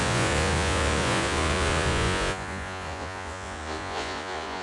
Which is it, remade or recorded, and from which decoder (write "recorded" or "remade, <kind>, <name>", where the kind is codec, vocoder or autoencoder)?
remade, vocoder, Vocos